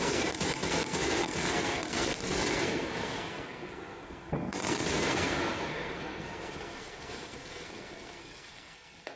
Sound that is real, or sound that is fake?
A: fake